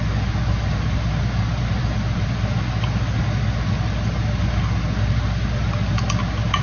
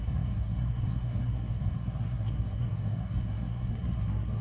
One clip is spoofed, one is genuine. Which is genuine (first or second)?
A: first